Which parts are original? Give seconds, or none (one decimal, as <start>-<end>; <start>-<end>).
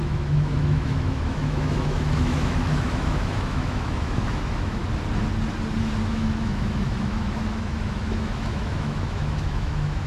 4.8-6.1